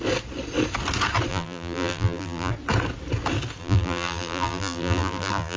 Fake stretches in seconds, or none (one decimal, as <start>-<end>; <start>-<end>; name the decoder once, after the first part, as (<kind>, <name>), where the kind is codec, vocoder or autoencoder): 1.3-2.5 (vocoder, BigVGAN v2); 3.6-5.6